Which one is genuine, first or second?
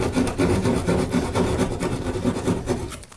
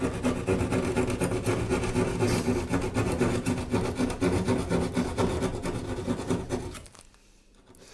second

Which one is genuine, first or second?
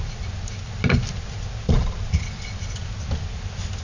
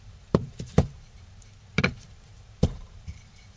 first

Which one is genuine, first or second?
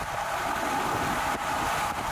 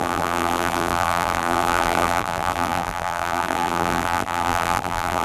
first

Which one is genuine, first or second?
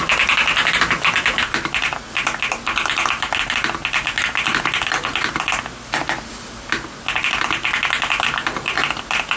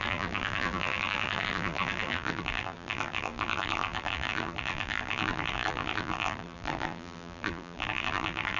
first